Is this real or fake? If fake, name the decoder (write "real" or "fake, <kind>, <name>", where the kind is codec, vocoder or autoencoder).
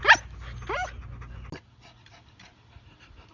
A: real